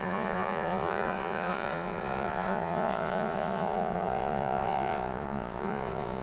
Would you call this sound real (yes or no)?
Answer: no